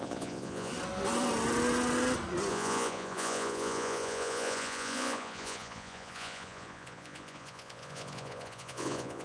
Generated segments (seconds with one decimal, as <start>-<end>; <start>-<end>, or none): 0.0-0.7; 2.5-9.2